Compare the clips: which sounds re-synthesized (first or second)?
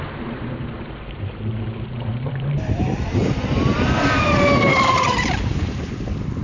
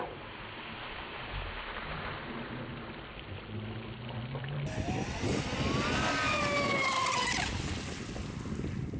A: first